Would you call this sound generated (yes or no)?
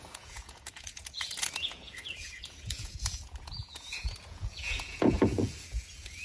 yes